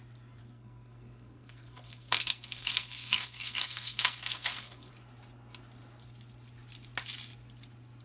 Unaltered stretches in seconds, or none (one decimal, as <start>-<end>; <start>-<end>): 0.0-0.4; 4.9-8.0

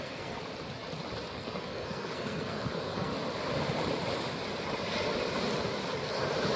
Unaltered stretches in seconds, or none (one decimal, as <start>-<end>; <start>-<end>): 0.4-1.3; 3.1-6.6

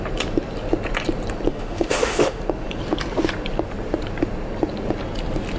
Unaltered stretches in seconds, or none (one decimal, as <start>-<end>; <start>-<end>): 0.0-1.5; 2.4-5.6

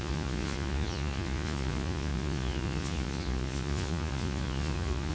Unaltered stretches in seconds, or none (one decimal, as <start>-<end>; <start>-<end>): none

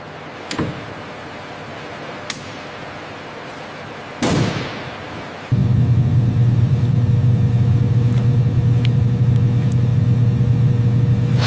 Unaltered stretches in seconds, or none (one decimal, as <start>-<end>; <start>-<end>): 0.0-11.5

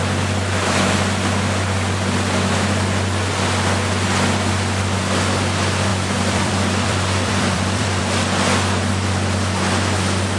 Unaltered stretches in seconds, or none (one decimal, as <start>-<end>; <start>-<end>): 0.0-5.9; 8.0-10.4

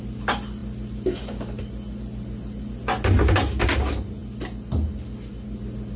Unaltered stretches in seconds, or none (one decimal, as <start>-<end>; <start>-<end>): 0.0-6.0